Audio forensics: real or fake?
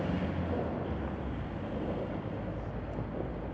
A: real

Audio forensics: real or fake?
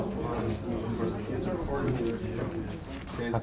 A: real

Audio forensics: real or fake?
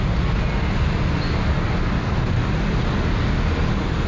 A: real